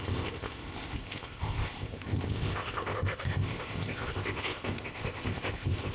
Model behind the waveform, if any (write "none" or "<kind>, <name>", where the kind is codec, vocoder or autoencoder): codec, ZipCodec